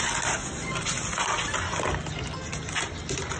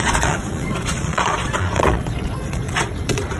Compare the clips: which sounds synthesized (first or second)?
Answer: second